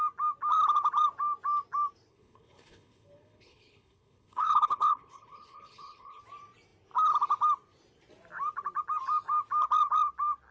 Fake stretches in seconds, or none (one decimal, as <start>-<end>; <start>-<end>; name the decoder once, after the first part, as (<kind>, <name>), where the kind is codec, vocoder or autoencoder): 2.1-6.2 (codec, HILCodec)